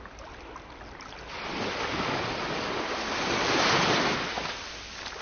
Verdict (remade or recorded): recorded